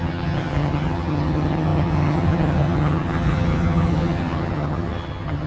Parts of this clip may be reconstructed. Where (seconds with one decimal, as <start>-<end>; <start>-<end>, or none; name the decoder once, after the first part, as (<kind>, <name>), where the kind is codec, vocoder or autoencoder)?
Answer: 0.0-5.5 (vocoder, HiFi-GAN)